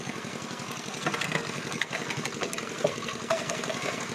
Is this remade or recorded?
remade